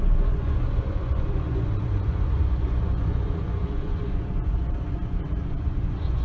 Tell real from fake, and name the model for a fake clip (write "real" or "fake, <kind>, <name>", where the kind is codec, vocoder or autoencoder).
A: fake, vocoder, Vocos